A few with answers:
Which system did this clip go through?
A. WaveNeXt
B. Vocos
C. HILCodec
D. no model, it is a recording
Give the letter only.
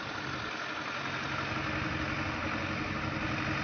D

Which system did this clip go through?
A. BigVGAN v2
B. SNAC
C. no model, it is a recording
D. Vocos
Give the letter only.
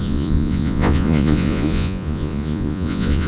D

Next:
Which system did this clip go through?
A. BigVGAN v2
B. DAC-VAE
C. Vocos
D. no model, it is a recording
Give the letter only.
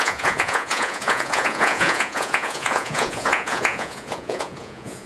C